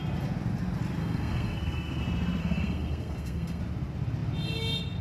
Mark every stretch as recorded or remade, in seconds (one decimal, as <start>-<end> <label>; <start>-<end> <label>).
0.0-1.0 recorded; 1.0-2.0 remade; 2.0-2.4 recorded; 2.4-3.6 remade; 3.6-5.0 recorded